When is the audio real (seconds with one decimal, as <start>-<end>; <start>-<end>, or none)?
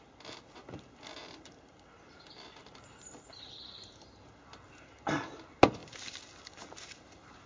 0.0-7.5